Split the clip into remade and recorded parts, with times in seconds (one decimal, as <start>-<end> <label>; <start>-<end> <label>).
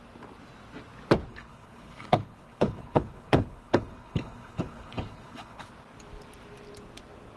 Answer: 0.0-1.3 recorded; 1.3-5.7 remade; 5.7-7.4 recorded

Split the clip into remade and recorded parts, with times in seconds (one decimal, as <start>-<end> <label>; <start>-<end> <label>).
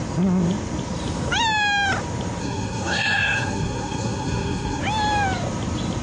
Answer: 0.0-2.4 recorded; 2.4-4.8 remade; 4.8-6.0 recorded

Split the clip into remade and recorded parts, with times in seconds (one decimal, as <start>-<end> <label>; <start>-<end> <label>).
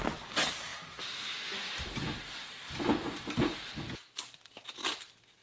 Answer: 0.0-5.4 recorded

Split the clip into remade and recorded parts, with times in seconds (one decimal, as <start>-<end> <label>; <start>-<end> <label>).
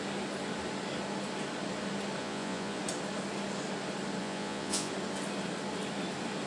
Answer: 0.0-2.2 recorded; 2.2-2.8 remade; 2.8-4.2 recorded; 4.2-4.9 remade; 4.9-6.5 recorded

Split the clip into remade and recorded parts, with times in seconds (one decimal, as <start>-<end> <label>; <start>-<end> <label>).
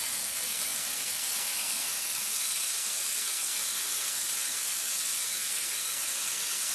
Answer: 0.0-6.7 remade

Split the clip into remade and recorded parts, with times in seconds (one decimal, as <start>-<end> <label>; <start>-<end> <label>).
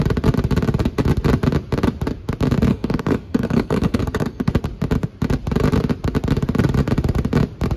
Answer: 0.0-2.7 recorded; 2.7-4.5 remade; 4.5-7.8 recorded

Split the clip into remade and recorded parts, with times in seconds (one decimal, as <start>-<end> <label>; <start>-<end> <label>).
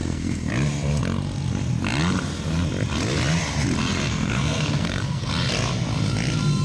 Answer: 0.0-0.5 remade; 0.5-4.1 recorded; 4.1-5.3 remade; 5.3-6.6 recorded